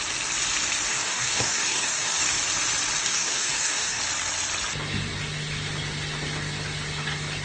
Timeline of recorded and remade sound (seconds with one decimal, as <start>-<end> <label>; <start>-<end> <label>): 0.0-0.9 recorded; 0.9-2.2 remade; 2.2-3.0 recorded; 3.0-4.0 remade; 4.0-7.4 recorded